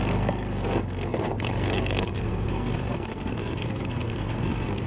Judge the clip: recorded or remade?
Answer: remade